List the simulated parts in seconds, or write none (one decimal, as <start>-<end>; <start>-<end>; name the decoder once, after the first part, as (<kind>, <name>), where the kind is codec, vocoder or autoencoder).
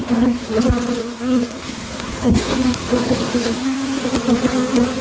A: 0.0-0.6 (codec, SNAC); 1.0-4.0